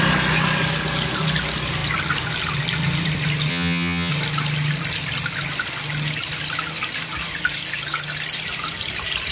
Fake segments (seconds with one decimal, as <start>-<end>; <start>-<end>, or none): 3.5-4.1